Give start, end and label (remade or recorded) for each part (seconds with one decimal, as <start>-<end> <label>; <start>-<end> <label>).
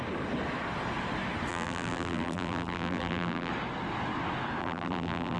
0.0-1.5 recorded; 1.5-3.5 remade; 3.5-4.6 recorded; 4.6-5.4 remade